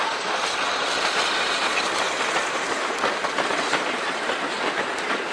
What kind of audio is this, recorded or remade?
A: recorded